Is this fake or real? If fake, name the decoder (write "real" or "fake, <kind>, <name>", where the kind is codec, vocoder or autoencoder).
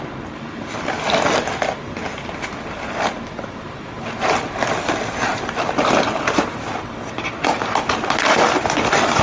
real